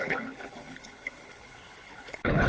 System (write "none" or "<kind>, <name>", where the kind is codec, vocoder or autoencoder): codec, HILCodec